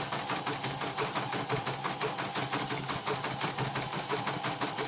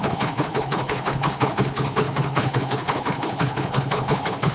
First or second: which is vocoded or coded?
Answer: second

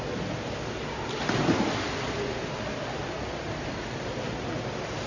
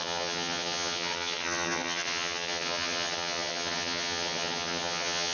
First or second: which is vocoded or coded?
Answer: second